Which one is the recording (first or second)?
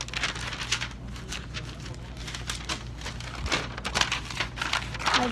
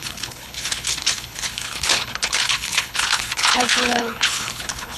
first